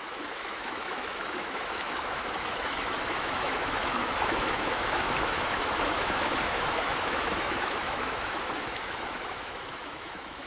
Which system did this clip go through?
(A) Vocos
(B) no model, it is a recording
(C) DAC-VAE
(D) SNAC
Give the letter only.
C